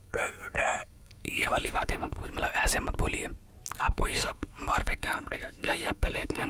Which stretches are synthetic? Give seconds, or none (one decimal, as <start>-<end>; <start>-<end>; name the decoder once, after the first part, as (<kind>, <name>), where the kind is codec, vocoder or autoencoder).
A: 0.0-2.2 (codec, SNAC); 3.8-6.5